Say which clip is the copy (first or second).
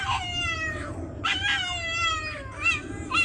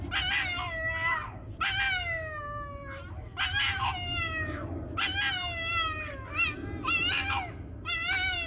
first